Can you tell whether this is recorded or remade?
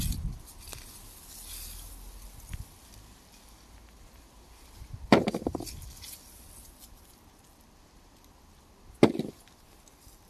recorded